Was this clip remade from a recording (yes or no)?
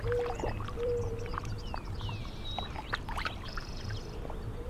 yes